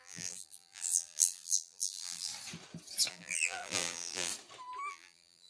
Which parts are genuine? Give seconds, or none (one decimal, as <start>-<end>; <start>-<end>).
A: 2.3-3.1; 4.3-4.9